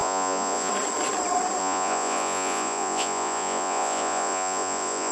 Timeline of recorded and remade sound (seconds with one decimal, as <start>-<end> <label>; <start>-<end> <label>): 0.0-0.7 remade; 0.7-1.6 recorded; 1.6-5.1 remade